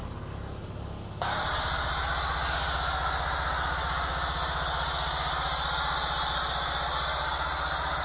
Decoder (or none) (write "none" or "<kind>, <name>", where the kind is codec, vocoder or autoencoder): none